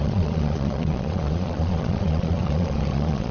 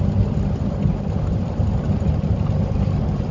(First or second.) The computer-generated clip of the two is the first